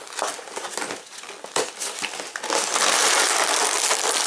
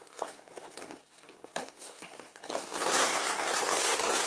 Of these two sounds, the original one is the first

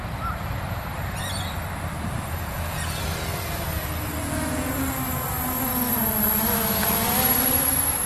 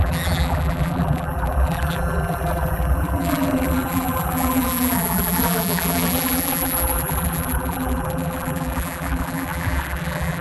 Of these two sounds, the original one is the first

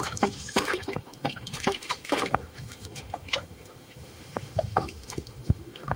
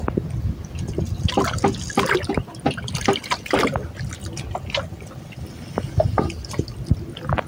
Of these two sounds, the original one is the second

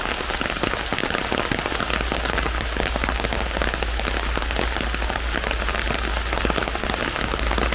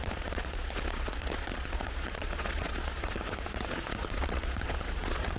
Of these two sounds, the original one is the first